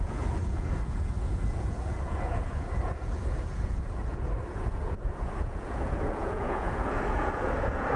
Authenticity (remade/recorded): remade